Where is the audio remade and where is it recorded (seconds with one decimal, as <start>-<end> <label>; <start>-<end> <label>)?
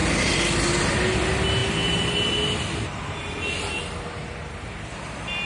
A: 0.0-5.5 recorded